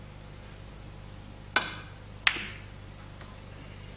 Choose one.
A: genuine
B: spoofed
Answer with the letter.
A